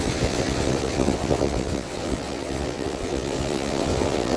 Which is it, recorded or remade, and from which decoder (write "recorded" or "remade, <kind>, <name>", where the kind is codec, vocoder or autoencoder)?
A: remade, vocoder, WaveNeXt